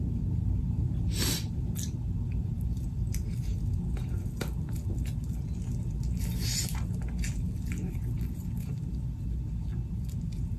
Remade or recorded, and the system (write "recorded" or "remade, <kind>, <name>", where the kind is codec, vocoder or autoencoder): recorded